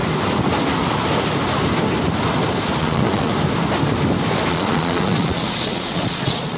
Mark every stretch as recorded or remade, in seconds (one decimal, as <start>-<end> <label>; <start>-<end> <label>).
0.0-2.8 recorded; 2.8-3.3 remade; 3.3-4.5 recorded; 4.5-6.6 remade